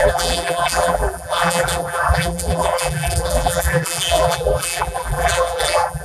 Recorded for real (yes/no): no